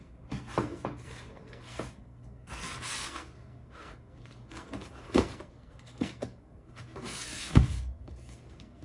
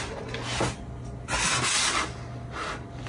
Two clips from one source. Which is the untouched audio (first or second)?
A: second